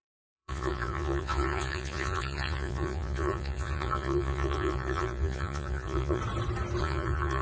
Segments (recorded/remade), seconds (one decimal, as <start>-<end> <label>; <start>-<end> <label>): 0.0-6.2 remade; 6.2-6.8 recorded; 6.8-7.4 remade